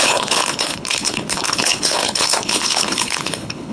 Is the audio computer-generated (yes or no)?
yes